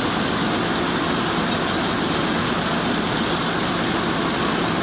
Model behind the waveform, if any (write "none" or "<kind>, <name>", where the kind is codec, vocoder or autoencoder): none